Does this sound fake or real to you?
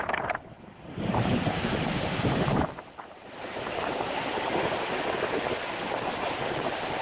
fake